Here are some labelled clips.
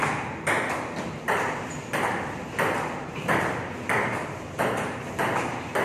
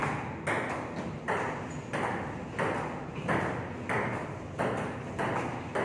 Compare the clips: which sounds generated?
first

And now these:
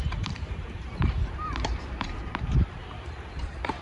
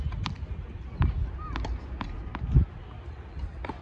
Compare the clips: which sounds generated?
first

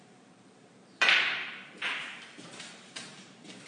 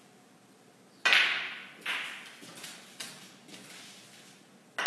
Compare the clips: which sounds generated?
first